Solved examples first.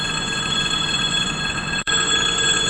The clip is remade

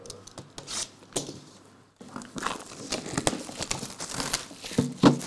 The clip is recorded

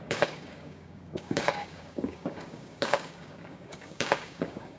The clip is remade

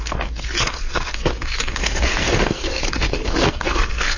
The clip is remade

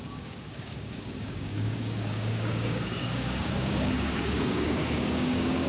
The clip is remade